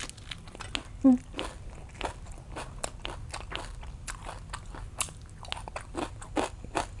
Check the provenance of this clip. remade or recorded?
recorded